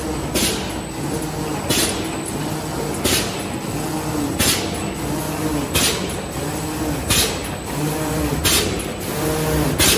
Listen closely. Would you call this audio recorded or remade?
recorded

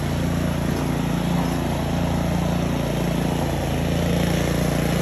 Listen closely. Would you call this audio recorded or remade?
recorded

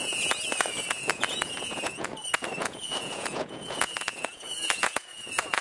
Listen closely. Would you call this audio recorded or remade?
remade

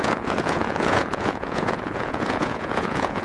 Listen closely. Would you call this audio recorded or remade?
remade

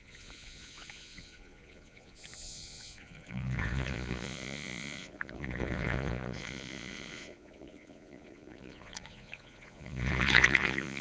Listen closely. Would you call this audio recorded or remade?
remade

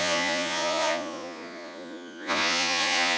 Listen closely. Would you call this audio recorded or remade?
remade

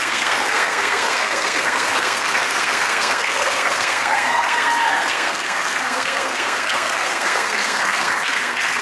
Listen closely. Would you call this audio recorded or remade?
remade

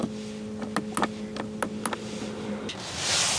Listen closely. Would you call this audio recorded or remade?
recorded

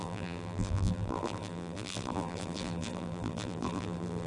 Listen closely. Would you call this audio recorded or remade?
remade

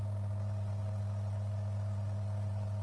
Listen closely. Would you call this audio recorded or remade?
recorded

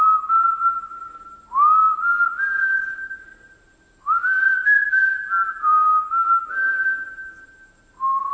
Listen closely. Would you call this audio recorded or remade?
recorded